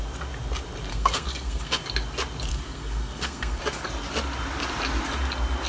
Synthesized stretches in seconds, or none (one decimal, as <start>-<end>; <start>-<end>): 0.9-1.8; 2.5-3.6